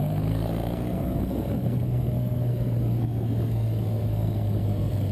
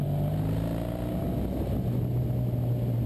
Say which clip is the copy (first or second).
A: first